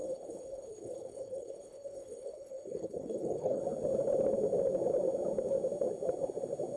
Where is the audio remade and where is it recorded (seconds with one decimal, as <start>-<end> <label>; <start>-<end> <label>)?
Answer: 0.0-3.6 remade; 3.6-6.8 recorded